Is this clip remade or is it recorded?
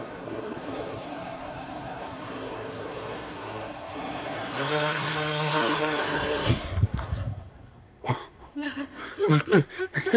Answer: remade